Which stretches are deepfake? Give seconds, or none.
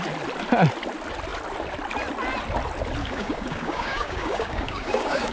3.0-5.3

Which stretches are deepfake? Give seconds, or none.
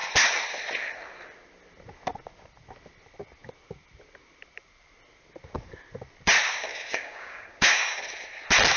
6.7-8.0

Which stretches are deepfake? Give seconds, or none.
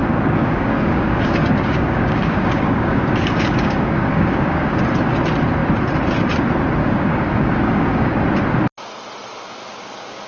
0.0-4.8; 6.8-8.2; 9.6-10.3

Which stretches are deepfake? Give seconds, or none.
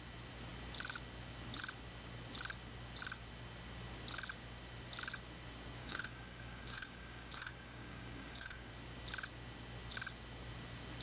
5.8-8.7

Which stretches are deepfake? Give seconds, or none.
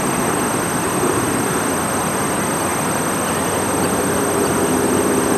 none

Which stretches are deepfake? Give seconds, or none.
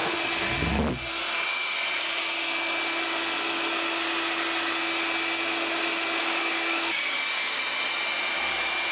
6.2-7.6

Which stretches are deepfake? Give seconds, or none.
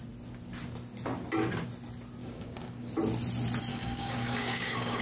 2.2-2.9; 3.7-5.0